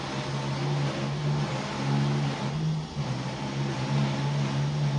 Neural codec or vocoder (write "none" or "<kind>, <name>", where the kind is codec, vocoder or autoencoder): none